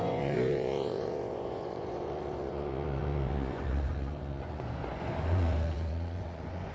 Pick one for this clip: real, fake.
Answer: fake